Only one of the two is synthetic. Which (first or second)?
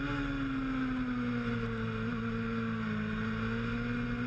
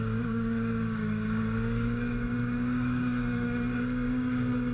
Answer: second